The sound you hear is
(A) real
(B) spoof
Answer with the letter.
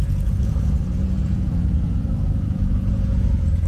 B